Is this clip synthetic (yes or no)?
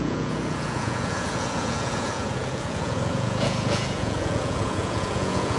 yes